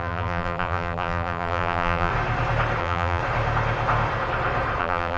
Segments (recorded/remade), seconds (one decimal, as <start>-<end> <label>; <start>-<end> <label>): 0.0-2.1 remade; 2.1-2.8 recorded; 2.8-3.2 remade; 3.2-4.8 recorded; 4.8-5.2 remade